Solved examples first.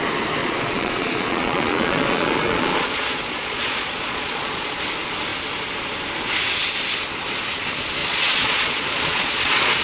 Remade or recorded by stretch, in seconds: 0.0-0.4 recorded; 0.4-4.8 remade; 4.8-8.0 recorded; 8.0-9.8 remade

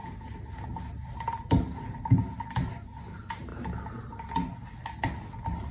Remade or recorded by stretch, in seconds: 0.0-5.7 recorded

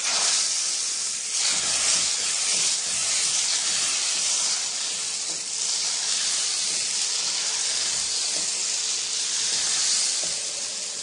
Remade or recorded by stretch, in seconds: 0.0-11.0 recorded

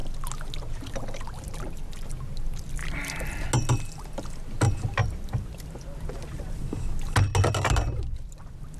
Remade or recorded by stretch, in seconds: 0.0-8.8 recorded

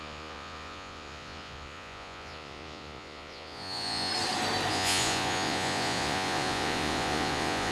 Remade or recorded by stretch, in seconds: 0.0-4.1 remade; 4.1-4.7 recorded; 4.7-7.7 remade